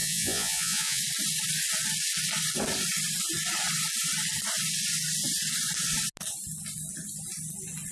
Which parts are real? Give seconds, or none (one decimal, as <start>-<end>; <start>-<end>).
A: 1.0-7.9

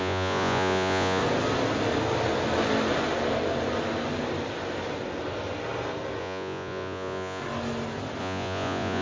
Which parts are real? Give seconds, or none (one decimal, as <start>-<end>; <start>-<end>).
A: 1.2-6.2; 7.4-8.2